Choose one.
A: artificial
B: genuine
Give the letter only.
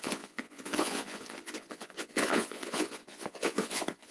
A